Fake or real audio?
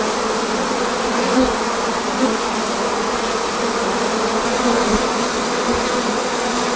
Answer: real